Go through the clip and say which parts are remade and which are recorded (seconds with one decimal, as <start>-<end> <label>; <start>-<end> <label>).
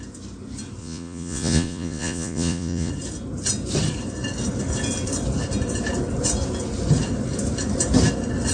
0.0-0.8 recorded; 0.8-2.9 remade; 2.9-8.5 recorded